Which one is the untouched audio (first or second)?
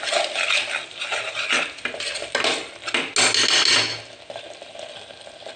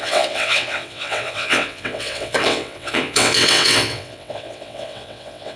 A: first